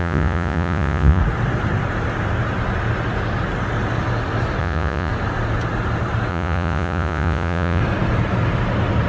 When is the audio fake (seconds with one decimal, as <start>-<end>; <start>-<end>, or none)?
0.0-1.2; 4.6-5.1; 6.3-7.8